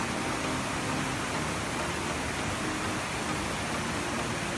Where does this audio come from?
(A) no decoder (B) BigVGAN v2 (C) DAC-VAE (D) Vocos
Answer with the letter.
A